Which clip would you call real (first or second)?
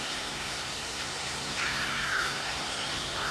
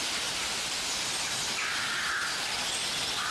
second